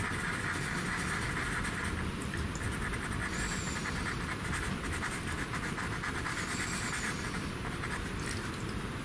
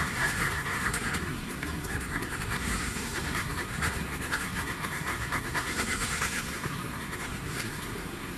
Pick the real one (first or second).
first